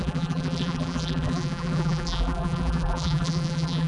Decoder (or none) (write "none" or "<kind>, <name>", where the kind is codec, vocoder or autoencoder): vocoder, BigVGAN v2